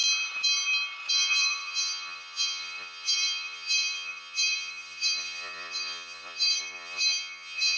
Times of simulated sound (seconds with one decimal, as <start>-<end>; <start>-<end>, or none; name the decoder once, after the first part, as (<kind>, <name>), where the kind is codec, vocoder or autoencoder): 1.1-7.8 (vocoder, Vocos)

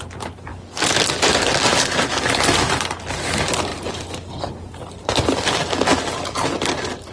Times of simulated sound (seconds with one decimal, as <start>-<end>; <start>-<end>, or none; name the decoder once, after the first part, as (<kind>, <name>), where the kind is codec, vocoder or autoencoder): none

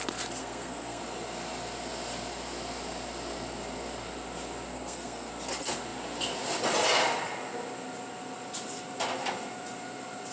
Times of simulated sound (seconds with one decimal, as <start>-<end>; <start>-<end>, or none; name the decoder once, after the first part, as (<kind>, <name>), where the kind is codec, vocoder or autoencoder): 0.4-1.0 (codec, SNAC); 4.7-5.3

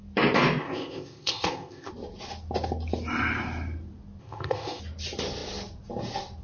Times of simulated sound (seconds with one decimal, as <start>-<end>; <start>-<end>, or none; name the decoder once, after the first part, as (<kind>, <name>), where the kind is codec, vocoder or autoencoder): 0.6-1.9 (codec, ZipCodec); 4.2-4.8